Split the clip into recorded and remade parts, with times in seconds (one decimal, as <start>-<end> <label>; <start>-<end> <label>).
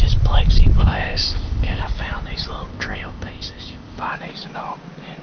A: 0.0-0.8 recorded; 0.8-1.8 remade; 1.8-2.7 recorded; 2.7-4.1 remade; 4.1-5.2 recorded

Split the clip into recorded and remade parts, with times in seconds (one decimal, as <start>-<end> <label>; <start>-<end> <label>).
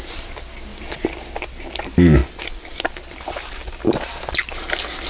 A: 0.0-5.1 recorded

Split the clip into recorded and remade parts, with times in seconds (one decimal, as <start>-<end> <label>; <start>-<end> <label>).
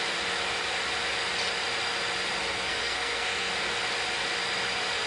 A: 0.0-2.4 recorded; 2.4-3.5 remade; 3.5-5.1 recorded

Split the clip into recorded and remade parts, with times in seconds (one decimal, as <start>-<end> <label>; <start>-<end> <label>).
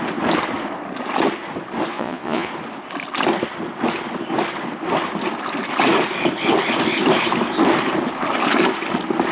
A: 0.0-1.9 recorded; 1.9-2.5 remade; 2.5-9.3 recorded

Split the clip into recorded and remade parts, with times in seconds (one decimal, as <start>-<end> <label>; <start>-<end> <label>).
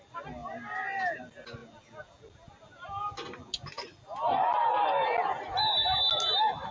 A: 0.0-0.4 recorded; 0.4-1.2 remade; 1.2-6.7 recorded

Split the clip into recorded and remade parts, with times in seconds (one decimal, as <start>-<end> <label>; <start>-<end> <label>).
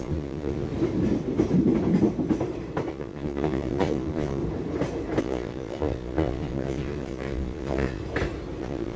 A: 0.0-0.7 remade; 0.7-2.9 recorded; 2.9-4.4 remade; 4.4-5.2 recorded; 5.2-8.0 remade; 8.0-8.6 recorded; 8.6-9.0 remade